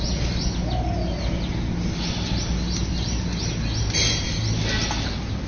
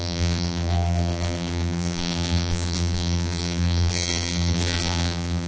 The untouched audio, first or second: first